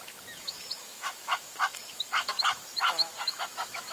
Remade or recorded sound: remade